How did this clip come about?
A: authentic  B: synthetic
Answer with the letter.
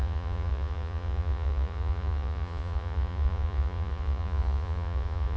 B